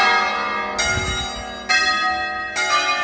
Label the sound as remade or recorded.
recorded